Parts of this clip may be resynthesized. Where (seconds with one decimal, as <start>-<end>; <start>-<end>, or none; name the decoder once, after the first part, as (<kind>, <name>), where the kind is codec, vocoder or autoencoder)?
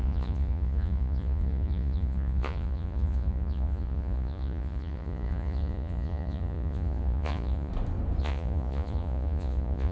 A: 0.0-7.7 (vocoder, Vocos); 8.2-9.9